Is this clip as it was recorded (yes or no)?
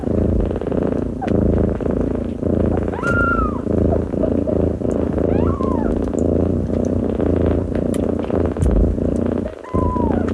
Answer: yes